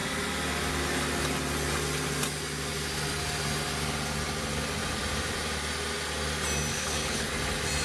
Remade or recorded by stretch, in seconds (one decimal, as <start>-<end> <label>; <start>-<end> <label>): 0.0-6.7 recorded; 6.7-7.3 remade; 7.3-7.8 recorded

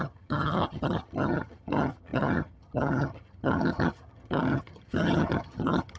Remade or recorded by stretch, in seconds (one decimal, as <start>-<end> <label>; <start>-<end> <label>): 0.0-6.0 remade